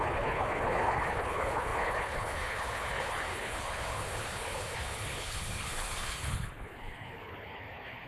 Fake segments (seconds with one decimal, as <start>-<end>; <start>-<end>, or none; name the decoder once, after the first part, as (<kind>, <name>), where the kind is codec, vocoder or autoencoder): 0.0-8.1 (codec, HILCodec)